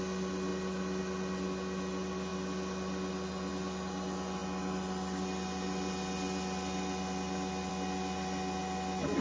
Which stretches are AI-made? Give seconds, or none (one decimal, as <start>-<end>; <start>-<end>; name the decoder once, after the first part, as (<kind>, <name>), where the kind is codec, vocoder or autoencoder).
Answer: none